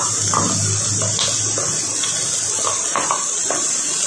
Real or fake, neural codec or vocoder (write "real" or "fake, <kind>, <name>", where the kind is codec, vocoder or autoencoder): real